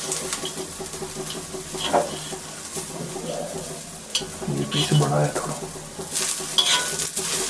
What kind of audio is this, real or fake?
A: real